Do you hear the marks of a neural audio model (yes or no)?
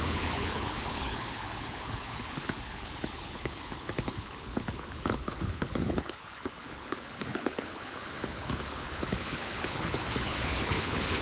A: yes